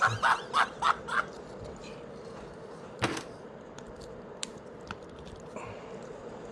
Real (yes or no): no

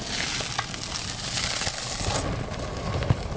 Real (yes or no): yes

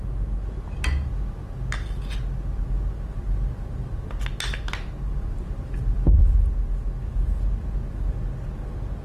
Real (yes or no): yes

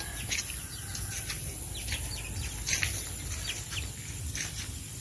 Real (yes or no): yes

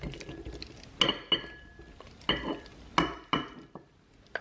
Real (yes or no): yes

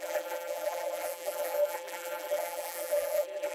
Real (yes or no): no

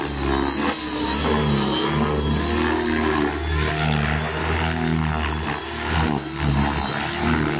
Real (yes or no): yes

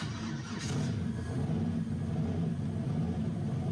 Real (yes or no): yes